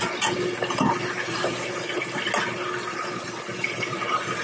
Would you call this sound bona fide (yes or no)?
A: yes